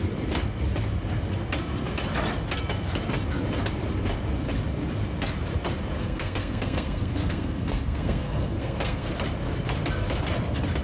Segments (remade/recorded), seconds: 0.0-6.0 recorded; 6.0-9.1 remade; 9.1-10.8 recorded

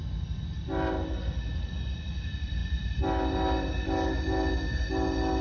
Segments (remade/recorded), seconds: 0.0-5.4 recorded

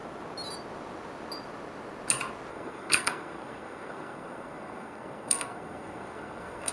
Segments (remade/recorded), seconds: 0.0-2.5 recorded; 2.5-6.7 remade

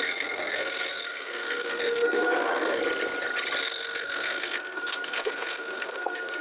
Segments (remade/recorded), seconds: 0.0-2.8 remade; 2.8-3.6 recorded; 3.6-6.4 remade

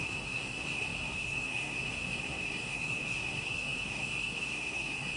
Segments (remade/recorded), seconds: 0.0-5.2 remade

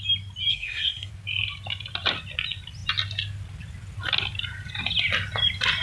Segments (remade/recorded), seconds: 0.0-0.5 recorded; 0.5-1.1 remade; 1.1-5.8 recorded

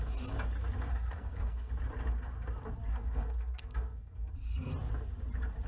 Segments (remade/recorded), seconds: 0.0-0.9 recorded; 0.9-1.7 remade; 1.7-2.9 recorded; 2.9-4.3 remade; 4.3-5.7 recorded

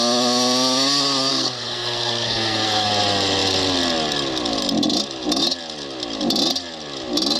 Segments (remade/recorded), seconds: 0.0-1.3 recorded; 1.3-2.9 remade; 2.9-7.4 recorded